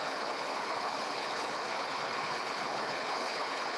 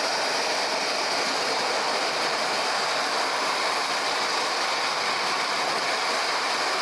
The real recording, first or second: second